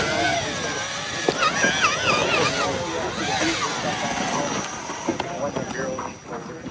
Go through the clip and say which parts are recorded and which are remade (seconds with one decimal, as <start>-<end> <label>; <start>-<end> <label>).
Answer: 0.0-6.7 recorded